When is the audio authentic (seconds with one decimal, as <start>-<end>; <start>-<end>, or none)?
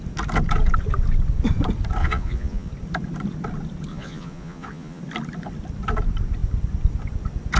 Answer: 0.0-2.0; 2.7-3.9; 5.0-7.6